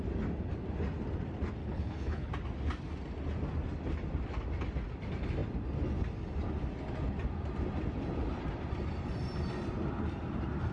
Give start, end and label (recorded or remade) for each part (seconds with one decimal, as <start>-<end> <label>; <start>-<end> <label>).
0.0-1.6 recorded; 1.6-2.3 remade; 2.3-10.7 recorded